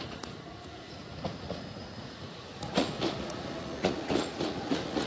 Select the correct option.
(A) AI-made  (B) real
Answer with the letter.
A